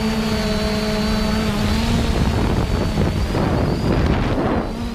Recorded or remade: recorded